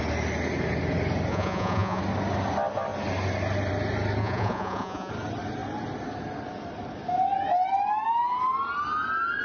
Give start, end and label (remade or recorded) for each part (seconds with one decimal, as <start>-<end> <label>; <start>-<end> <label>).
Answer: 0.0-1.3 recorded; 1.3-2.0 remade; 2.0-4.2 recorded; 4.2-5.1 remade; 5.1-9.4 recorded